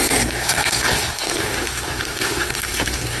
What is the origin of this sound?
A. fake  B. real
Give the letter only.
A